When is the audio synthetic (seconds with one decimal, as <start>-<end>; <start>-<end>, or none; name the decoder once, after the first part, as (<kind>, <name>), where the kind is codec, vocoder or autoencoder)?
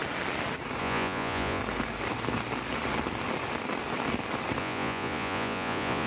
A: 0.8-1.6 (vocoder, Vocos); 4.6-6.1